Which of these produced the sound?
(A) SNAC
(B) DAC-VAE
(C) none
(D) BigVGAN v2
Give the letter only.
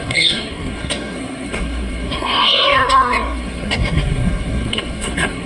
A